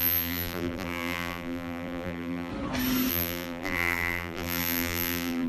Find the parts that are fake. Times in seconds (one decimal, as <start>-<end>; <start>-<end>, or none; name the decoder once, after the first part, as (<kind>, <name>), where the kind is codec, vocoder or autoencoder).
0.0-2.5 (vocoder, BigVGAN v2); 3.1-5.5